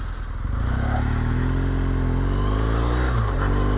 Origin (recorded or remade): recorded